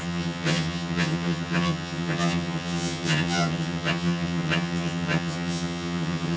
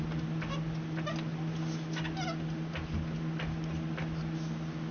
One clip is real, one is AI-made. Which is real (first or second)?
second